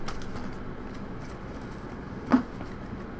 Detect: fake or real real